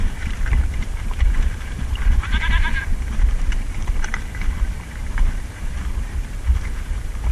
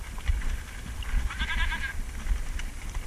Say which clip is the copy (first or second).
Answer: first